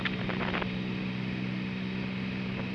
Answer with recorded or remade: recorded